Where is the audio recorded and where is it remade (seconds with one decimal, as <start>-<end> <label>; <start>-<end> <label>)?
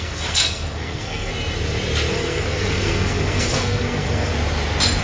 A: 0.0-1.3 remade; 1.3-2.1 recorded; 2.1-4.3 remade; 4.3-5.0 recorded